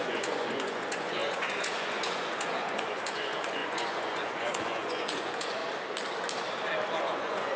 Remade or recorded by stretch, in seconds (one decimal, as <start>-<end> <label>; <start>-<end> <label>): 0.0-5.6 remade; 5.6-7.0 recorded; 7.0-7.6 remade